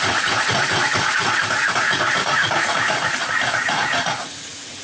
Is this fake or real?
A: fake